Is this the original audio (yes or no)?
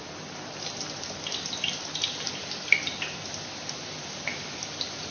yes